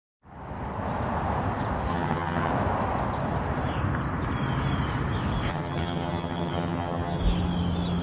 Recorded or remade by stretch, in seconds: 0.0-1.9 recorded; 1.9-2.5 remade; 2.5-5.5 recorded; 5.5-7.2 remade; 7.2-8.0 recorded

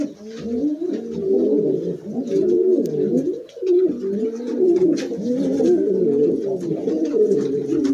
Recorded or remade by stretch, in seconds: 0.0-7.9 recorded

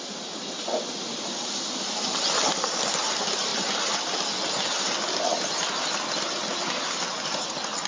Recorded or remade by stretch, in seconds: 0.0-7.9 recorded

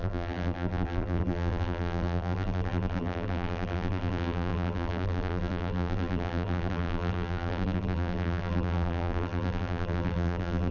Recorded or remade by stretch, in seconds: 0.0-10.7 remade

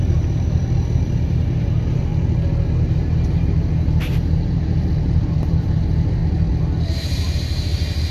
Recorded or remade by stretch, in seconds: 0.0-2.1 remade; 2.1-2.8 recorded; 2.8-6.2 remade; 6.2-6.8 recorded; 6.8-8.1 remade

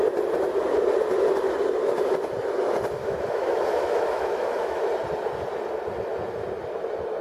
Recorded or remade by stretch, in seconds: 0.0-3.0 recorded; 3.0-4.8 remade; 4.8-7.2 recorded

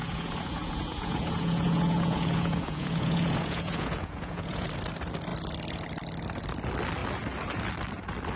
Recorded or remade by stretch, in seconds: 0.0-4.7 remade; 4.7-8.4 recorded

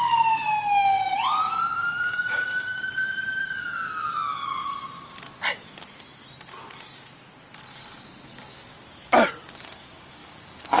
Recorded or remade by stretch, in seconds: 0.0-2.8 remade; 2.8-3.4 recorded; 3.4-4.7 remade; 4.7-9.6 recorded; 9.6-10.8 remade